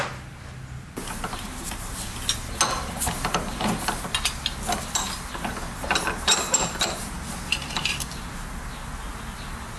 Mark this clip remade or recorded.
recorded